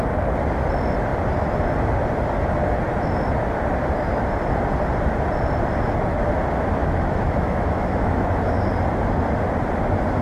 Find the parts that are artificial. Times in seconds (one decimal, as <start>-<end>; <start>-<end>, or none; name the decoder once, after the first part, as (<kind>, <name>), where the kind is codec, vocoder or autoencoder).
6.8-8.6 (autoencoder, DAC-VAE)